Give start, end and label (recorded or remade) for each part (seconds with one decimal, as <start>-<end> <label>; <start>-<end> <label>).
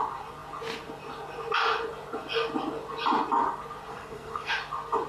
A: 0.0-3.9 recorded; 3.9-4.5 remade; 4.5-5.1 recorded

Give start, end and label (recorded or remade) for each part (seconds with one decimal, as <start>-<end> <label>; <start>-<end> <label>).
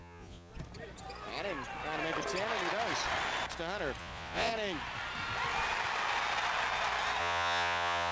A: 0.0-0.5 remade; 0.5-4.0 recorded; 4.0-4.5 remade; 4.5-7.2 recorded; 7.2-8.1 remade